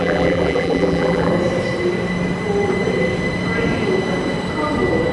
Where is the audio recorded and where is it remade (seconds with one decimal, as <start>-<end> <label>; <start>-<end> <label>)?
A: 0.0-1.3 remade; 1.3-5.1 recorded